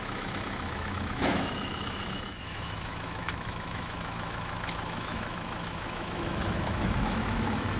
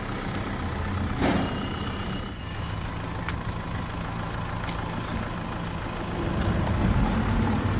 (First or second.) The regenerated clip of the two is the first